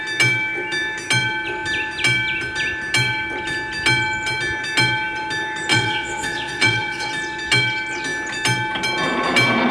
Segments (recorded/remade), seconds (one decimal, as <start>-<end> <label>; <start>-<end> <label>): 0.0-5.7 recorded; 5.7-7.1 remade; 7.1-9.7 recorded